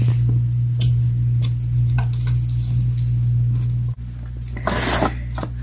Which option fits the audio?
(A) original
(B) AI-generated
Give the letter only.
A